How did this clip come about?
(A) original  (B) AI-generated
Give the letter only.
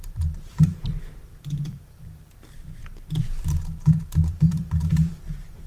B